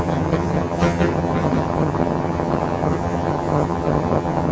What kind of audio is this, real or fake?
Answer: fake